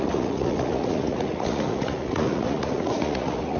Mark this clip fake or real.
fake